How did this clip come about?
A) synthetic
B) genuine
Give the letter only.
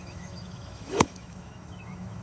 A